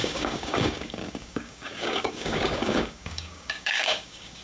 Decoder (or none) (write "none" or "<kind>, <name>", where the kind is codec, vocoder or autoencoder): codec, DAC